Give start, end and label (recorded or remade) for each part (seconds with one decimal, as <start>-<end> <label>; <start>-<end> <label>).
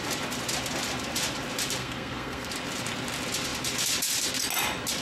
0.0-1.8 recorded; 1.8-2.5 remade; 2.5-5.0 recorded